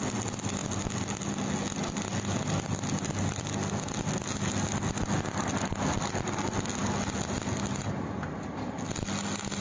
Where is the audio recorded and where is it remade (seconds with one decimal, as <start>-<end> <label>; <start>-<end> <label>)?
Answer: 0.0-9.6 recorded